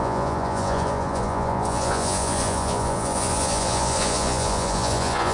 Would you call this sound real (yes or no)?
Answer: no